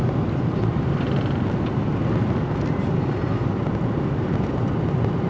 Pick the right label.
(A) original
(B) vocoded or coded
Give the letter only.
A